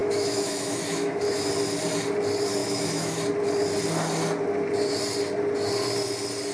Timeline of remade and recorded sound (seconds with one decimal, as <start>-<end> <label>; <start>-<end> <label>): 0.0-1.5 remade; 1.5-2.6 recorded; 2.6-3.2 remade; 3.2-6.5 recorded